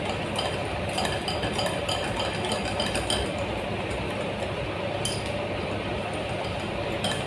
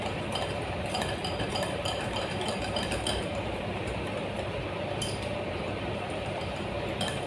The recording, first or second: first